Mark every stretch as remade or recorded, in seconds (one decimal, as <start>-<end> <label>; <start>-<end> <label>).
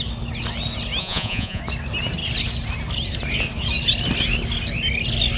0.0-1.0 recorded; 1.0-1.6 remade; 1.6-5.4 recorded